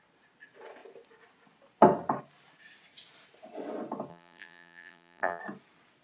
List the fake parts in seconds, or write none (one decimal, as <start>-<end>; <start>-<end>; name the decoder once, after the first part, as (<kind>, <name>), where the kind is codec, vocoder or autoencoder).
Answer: 4.1-5.4 (vocoder, BigVGAN v2)